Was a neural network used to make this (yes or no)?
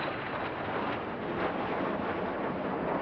no